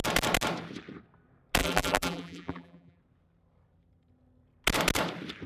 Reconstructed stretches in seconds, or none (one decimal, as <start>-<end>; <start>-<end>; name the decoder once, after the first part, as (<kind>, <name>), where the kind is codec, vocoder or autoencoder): 1.6-3.0 (vocoder, BigVGAN v2)